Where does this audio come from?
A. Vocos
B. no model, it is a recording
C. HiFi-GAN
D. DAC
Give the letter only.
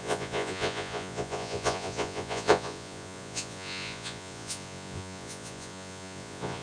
A